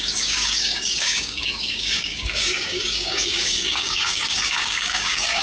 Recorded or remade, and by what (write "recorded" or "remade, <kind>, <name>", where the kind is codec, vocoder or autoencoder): remade, codec, DAC